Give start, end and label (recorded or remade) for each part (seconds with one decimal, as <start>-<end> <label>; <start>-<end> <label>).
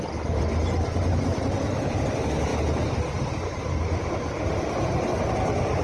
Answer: 0.0-5.8 recorded